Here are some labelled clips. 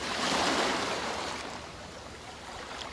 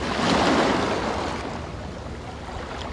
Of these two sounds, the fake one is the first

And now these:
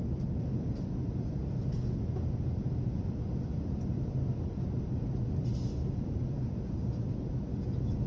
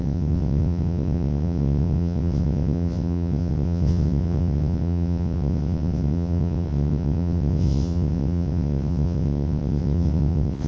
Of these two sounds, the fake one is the second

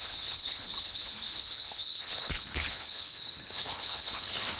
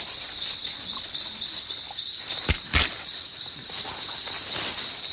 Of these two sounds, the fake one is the first